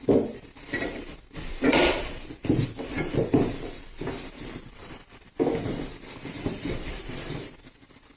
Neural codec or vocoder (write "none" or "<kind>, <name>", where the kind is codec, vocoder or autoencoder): vocoder, BigVGAN v2